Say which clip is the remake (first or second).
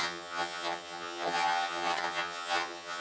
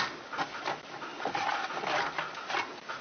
first